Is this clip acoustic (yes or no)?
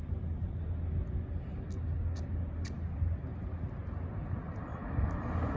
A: yes